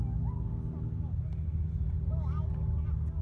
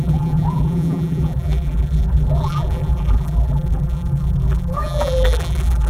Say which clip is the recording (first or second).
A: first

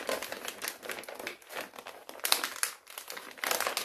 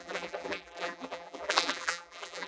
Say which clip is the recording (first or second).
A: first